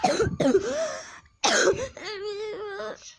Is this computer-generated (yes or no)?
no